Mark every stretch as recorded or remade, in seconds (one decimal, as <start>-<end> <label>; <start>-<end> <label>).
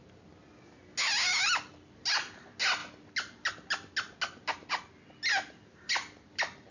0.0-6.7 recorded